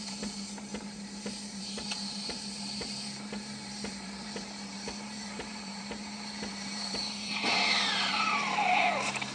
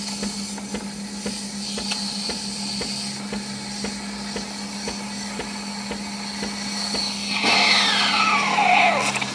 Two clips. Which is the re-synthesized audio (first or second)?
first